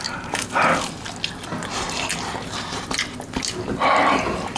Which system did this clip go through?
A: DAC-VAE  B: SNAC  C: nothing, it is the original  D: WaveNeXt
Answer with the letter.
C